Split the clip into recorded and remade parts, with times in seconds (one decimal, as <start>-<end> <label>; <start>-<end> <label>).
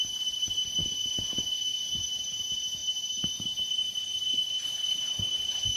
0.0-0.8 recorded; 0.8-1.9 remade; 1.9-5.8 recorded